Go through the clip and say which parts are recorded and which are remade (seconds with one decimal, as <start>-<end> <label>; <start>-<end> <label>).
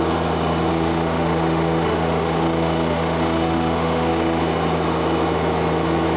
0.0-0.7 recorded; 0.7-4.4 remade; 4.4-6.2 recorded